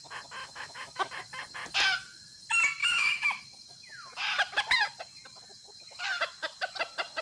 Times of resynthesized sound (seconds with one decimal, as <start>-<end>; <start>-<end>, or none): 0.4-1.1; 2.8-3.4

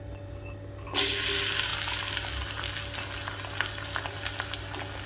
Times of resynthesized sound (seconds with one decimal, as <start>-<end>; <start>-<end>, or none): none

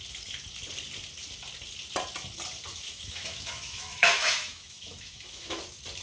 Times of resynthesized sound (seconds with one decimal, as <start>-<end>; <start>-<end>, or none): 2.7-5.6

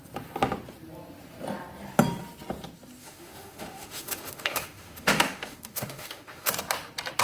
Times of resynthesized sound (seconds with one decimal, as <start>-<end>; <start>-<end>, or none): 3.0-6.5

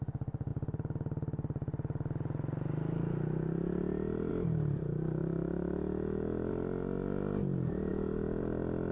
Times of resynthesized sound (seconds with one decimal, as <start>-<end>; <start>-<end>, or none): 5.2-6.5; 7.9-8.4